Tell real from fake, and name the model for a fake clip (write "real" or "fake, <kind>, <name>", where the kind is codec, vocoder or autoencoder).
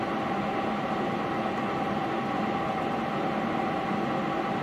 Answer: real